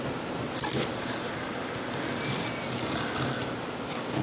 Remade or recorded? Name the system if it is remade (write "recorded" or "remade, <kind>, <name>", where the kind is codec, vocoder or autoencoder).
recorded